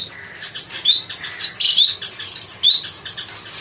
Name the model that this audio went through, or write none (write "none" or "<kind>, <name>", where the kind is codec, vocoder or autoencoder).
none